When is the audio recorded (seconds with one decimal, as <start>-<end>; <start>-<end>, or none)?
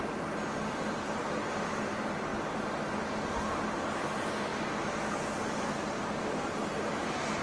0.0-7.4